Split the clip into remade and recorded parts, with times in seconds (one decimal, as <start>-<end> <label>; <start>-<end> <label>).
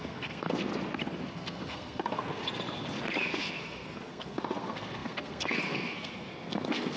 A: 0.0-0.7 remade; 0.7-1.3 recorded; 1.3-2.4 remade; 2.4-3.2 recorded; 3.2-7.0 remade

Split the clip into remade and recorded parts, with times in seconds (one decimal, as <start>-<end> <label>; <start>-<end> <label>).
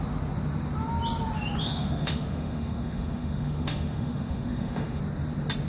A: 0.0-1.6 recorded; 1.6-5.0 remade; 5.0-5.7 recorded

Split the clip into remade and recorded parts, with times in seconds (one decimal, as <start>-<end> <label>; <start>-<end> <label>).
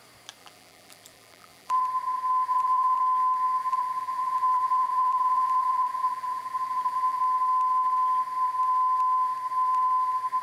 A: 0.0-0.4 recorded; 0.4-1.8 remade; 1.8-2.5 recorded; 2.5-3.0 remade; 3.0-3.6 recorded; 3.6-7.2 remade; 7.2-10.4 recorded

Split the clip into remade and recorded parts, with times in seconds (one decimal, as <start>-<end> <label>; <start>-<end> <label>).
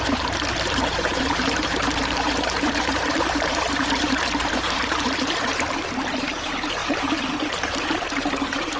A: 0.0-8.8 remade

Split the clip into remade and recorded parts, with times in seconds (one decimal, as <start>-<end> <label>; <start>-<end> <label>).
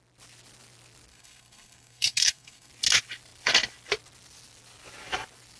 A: 0.0-1.1 recorded; 1.1-2.7 remade; 2.7-5.6 recorded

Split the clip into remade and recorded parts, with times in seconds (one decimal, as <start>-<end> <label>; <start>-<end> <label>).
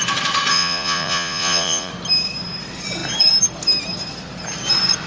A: 0.0-0.5 recorded; 0.5-1.9 remade; 1.9-5.1 recorded